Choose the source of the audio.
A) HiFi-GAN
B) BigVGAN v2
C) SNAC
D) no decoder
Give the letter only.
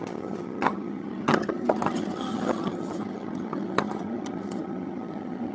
A